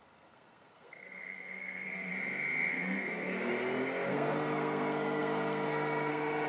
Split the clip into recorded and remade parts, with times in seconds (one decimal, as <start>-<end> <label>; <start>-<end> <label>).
0.0-2.1 remade; 2.1-2.7 recorded; 2.7-3.5 remade; 3.5-4.1 recorded; 4.1-6.5 remade